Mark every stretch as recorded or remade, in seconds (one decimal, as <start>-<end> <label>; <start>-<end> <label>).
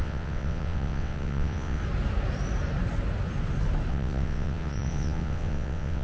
0.0-1.8 remade; 1.8-3.9 recorded; 3.9-6.0 remade